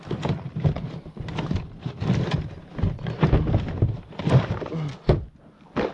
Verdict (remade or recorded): recorded